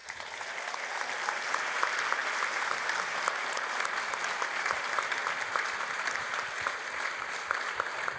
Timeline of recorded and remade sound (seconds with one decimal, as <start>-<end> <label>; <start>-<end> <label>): 0.0-8.2 recorded